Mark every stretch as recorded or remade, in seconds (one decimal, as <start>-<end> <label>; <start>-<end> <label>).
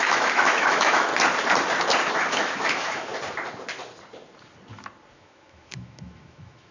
0.0-1.1 remade; 1.1-2.1 recorded; 2.1-3.1 remade; 3.1-5.1 recorded; 5.1-6.7 remade